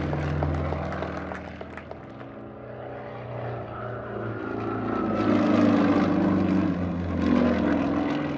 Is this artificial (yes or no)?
no